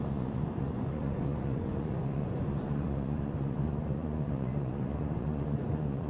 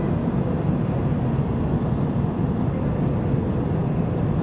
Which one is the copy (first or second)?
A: first